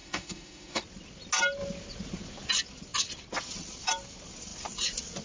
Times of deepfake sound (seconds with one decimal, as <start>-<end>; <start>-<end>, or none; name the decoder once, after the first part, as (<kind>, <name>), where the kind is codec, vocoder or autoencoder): 0.0-0.8 (autoencoder, DAC-VAE)